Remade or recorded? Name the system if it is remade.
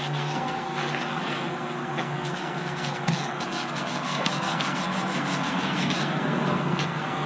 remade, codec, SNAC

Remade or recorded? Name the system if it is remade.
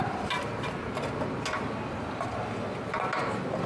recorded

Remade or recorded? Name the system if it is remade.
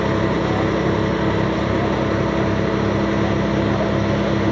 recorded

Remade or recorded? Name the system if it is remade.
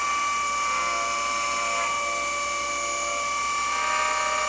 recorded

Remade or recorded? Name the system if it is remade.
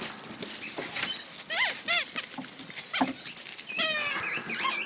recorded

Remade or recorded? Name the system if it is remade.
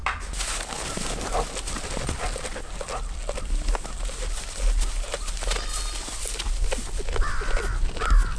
recorded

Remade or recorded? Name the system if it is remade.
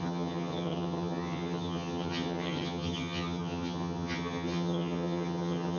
remade, vocoder, HiFi-GAN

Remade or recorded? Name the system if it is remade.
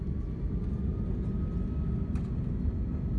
recorded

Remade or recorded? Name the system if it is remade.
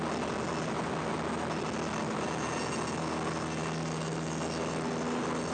recorded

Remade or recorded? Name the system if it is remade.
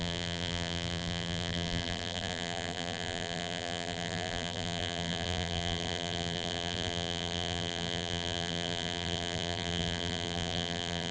remade, vocoder, BigVGAN v2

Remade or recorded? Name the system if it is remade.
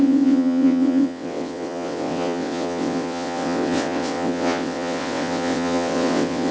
remade, vocoder, WaveNeXt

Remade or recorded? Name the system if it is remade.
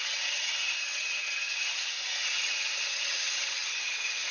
remade, vocoder, HiFi-GAN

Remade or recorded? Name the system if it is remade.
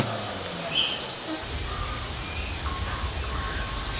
recorded